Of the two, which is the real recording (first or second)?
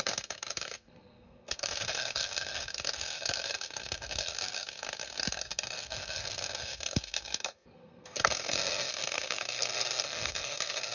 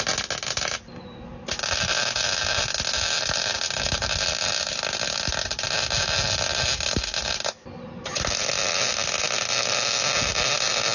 second